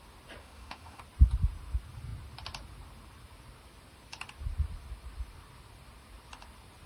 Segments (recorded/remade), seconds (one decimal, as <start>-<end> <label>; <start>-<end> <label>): 0.0-0.4 recorded; 0.4-1.0 remade; 1.0-6.9 recorded

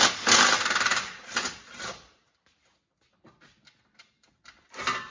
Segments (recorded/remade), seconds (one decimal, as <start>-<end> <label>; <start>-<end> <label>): 0.0-2.6 remade; 2.6-5.1 recorded

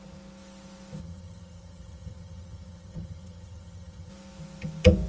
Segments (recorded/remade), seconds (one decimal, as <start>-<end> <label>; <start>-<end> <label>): 0.0-1.0 recorded; 1.0-4.1 remade; 4.1-5.1 recorded